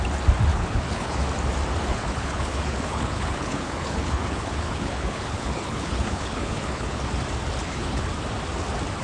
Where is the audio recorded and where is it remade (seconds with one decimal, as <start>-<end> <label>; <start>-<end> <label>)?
0.0-0.5 recorded; 0.5-1.2 remade; 1.2-1.9 recorded; 1.9-7.0 remade; 7.0-7.6 recorded; 7.6-8.1 remade; 8.1-9.0 recorded